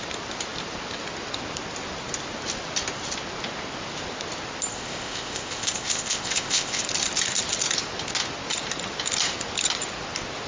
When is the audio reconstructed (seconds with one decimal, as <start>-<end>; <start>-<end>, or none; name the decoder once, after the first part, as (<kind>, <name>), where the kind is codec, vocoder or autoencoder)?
4.7-6.8 (codec, ZipCodec)

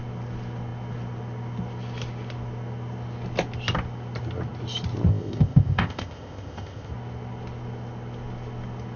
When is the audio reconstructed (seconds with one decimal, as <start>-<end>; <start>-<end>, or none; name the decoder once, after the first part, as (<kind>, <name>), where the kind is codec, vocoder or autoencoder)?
5.1-6.9 (codec, ZipCodec)

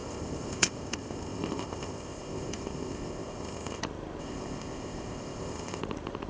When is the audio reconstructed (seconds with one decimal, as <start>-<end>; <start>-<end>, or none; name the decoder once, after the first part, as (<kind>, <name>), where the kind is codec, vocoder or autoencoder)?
0.0-3.8 (codec, ZipCodec); 4.2-5.8